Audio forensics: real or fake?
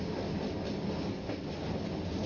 real